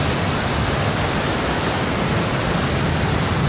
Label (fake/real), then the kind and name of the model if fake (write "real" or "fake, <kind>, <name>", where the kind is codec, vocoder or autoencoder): real